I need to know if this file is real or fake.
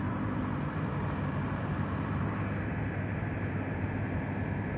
fake